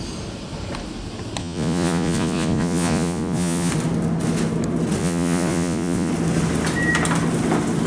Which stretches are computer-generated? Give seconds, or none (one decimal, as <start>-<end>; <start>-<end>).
1.4-3.7; 5.0-6.1